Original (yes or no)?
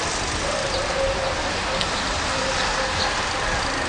yes